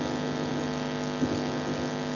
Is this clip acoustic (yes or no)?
yes